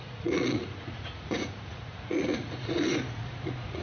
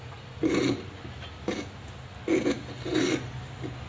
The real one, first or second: second